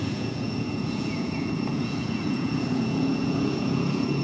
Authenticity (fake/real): fake